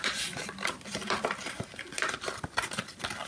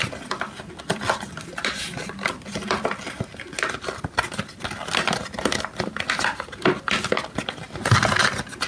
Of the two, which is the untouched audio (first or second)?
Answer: second